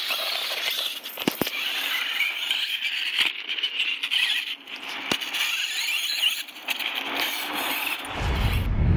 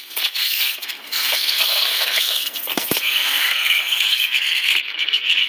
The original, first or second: first